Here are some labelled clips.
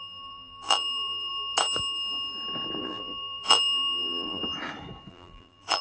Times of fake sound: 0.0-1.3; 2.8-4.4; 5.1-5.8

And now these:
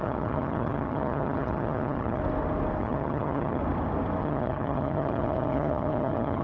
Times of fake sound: 0.0-2.2; 2.8-3.6; 4.2-6.4

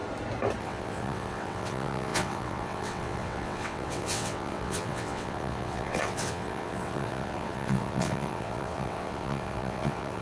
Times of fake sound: 0.6-10.2

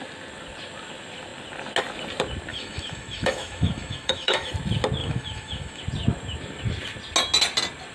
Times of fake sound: 2.5-4.5; 5.0-5.8

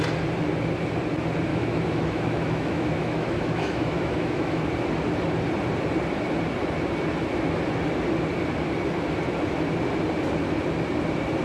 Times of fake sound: 1.5-4.7

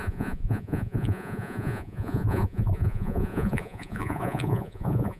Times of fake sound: 0.0-5.2

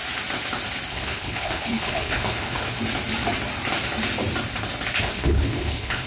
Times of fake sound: 0.9-2.6; 5.0-6.1